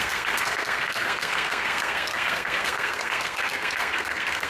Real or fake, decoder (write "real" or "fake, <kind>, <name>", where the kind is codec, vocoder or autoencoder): fake, codec, SNAC